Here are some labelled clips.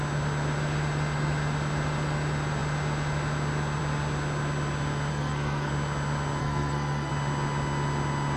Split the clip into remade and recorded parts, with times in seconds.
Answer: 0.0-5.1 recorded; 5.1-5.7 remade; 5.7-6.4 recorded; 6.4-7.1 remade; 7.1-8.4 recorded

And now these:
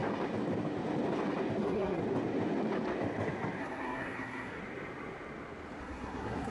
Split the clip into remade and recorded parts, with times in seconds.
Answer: 0.0-1.6 recorded; 1.6-2.0 remade; 2.0-3.6 recorded; 3.6-4.6 remade; 4.6-5.8 recorded; 5.8-6.5 remade

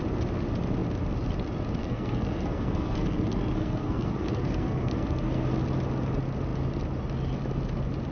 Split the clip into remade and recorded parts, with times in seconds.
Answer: 0.0-1.8 recorded; 1.8-5.5 remade; 5.5-8.1 recorded